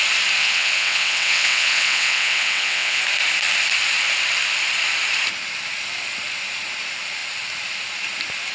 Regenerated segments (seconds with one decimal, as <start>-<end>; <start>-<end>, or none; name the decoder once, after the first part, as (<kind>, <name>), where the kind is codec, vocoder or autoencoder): 0.4-3.0 (vocoder, WaveNeXt)